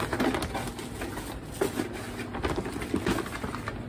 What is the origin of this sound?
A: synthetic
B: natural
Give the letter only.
B